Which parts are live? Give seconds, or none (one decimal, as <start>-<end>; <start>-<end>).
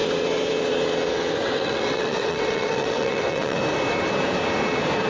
0.0-1.4; 3.6-5.1